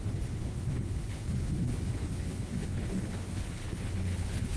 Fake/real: fake